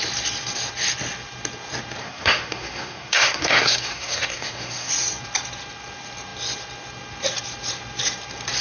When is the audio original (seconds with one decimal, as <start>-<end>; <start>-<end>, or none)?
0.0-2.0; 4.9-8.6